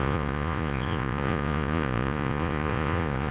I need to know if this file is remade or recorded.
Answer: remade